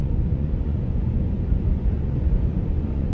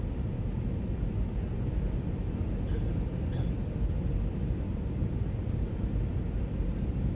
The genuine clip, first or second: second